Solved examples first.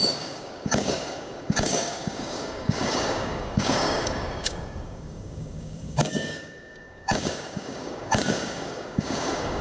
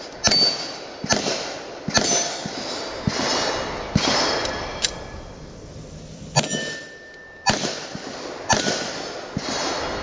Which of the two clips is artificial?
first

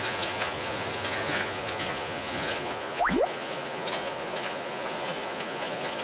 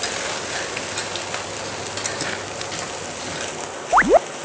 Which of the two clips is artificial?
first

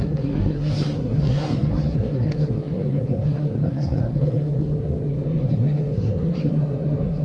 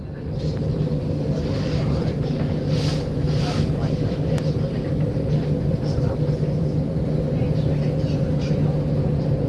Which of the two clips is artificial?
first